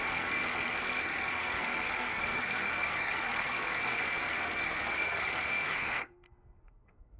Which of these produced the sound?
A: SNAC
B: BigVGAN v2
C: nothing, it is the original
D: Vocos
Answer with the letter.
A